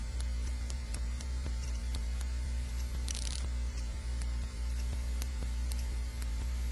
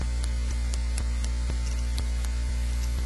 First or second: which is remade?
first